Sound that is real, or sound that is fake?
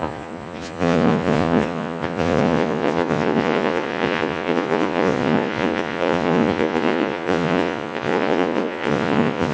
fake